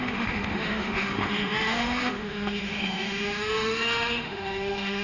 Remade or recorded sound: remade